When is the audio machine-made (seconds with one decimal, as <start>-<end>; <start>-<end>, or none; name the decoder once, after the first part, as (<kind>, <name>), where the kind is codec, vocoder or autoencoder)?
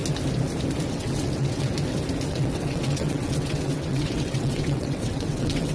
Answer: 0.9-1.7 (vocoder, WaveNeXt); 2.3-5.7